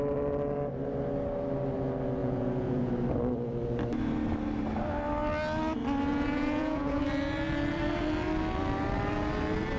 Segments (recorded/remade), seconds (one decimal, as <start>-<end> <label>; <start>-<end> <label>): 0.0-2.2 recorded; 2.2-2.9 remade; 2.9-6.1 recorded; 6.1-7.0 remade; 7.0-9.8 recorded